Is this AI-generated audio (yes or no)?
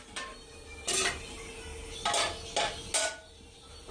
no